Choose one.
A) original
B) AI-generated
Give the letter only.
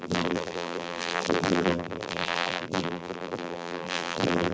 B